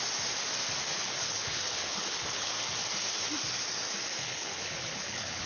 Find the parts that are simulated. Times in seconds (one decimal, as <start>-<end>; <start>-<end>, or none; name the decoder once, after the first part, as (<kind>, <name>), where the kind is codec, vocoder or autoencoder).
0.9-2.5 (codec, HILCodec); 4.2-5.5

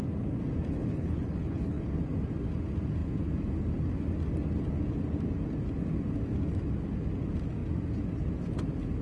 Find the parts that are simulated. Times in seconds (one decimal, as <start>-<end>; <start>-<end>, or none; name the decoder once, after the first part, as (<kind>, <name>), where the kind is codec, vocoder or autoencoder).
0.8-1.8 (codec, HILCodec)

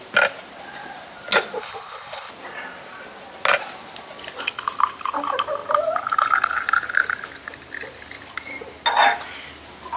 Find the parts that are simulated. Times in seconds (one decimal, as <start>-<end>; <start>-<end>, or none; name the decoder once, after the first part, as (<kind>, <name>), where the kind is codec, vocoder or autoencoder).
1.6-2.3 (codec, HILCodec)